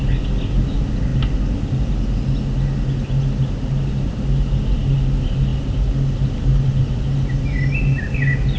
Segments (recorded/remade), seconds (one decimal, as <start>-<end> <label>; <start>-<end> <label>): 0.0-8.6 recorded